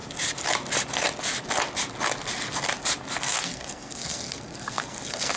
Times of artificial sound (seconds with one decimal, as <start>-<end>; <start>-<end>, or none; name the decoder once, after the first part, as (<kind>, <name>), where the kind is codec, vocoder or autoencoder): 3.2-5.4 (codec, SNAC)